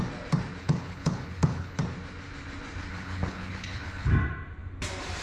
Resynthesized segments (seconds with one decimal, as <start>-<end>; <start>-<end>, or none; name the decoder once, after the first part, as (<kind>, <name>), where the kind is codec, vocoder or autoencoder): 0.6-1.8 (codec, HILCodec); 2.9-4.1